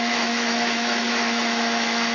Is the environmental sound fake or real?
fake